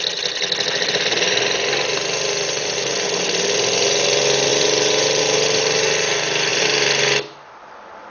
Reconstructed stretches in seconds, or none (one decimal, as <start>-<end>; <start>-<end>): none